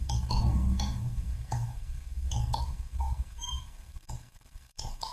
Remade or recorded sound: remade